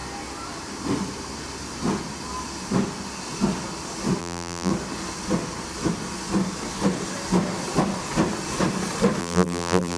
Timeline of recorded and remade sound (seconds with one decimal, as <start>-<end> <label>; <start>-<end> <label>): 0.0-4.2 recorded; 4.2-4.7 remade; 4.7-9.2 recorded; 9.2-10.0 remade